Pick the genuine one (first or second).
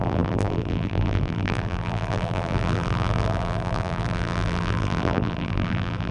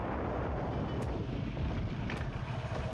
second